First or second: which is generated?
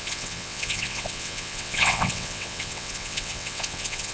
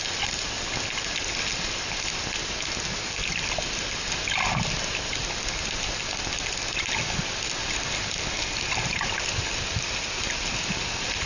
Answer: first